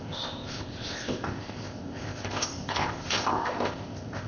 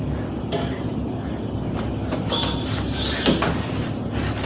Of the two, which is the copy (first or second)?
first